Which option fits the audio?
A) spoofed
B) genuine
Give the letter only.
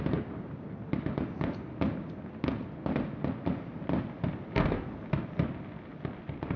B